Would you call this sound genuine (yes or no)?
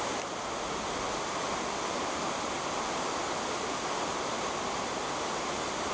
yes